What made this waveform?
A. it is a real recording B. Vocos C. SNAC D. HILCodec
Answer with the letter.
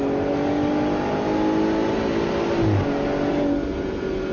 A